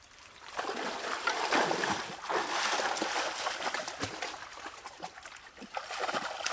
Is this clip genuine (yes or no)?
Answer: yes